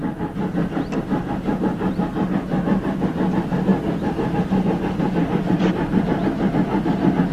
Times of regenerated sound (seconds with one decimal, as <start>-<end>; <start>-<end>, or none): none